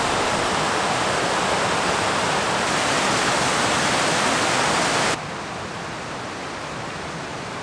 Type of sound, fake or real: real